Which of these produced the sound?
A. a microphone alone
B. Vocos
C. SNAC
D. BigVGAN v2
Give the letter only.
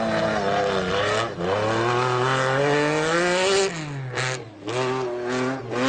A